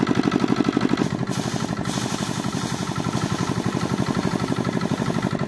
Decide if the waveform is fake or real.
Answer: real